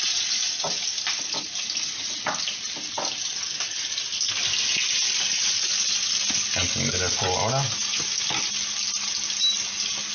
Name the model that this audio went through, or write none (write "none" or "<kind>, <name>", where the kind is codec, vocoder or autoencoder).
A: none